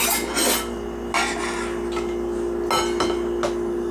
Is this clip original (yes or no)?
yes